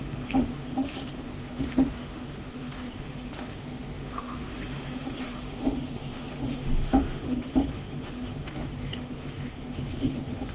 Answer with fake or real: fake